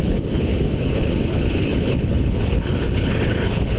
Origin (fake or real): fake